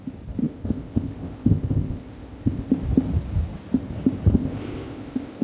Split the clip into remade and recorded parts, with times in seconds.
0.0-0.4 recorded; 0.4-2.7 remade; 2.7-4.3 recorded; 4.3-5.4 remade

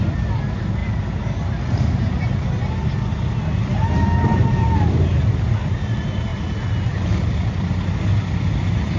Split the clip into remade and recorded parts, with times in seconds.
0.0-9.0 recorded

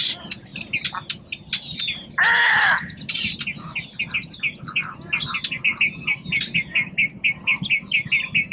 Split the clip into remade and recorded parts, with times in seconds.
0.0-8.5 recorded

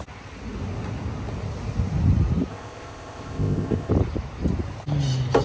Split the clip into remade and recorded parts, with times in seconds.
0.0-2.5 recorded; 2.5-3.9 remade; 3.9-5.4 recorded

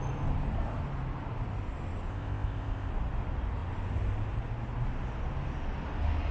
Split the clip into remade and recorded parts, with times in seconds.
0.0-2.1 recorded; 2.1-2.9 remade; 2.9-6.3 recorded

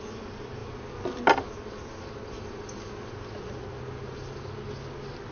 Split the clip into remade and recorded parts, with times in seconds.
0.0-5.3 recorded